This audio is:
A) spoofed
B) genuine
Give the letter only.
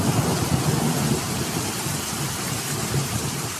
A